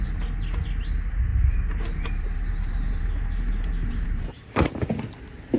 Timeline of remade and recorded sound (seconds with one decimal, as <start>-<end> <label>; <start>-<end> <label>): 0.0-1.3 recorded; 1.3-4.7 remade; 4.7-5.6 recorded